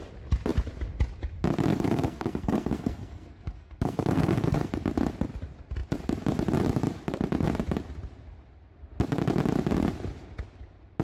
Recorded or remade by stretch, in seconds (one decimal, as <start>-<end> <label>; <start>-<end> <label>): 0.0-1.7 recorded; 1.7-4.7 remade; 4.7-11.0 recorded